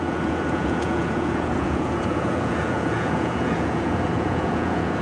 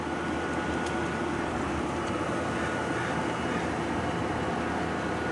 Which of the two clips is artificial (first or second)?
first